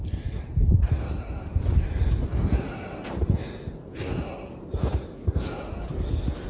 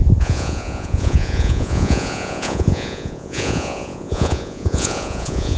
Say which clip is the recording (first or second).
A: first